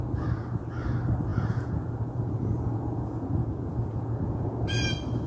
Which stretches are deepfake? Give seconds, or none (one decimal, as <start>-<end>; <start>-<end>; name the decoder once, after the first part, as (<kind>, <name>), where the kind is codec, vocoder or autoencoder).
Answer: 1.3-4.5 (vocoder, Vocos)